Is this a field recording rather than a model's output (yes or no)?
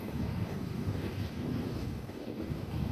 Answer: no